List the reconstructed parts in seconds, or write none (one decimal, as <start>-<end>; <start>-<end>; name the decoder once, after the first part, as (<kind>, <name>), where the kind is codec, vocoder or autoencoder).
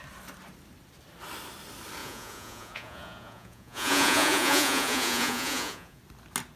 2.0-6.0 (vocoder, Vocos)